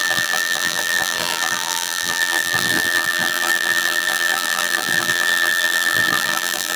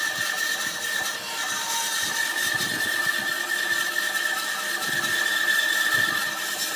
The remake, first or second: first